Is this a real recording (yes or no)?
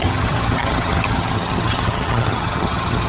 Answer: no